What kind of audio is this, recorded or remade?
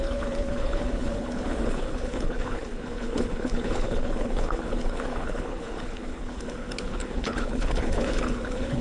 remade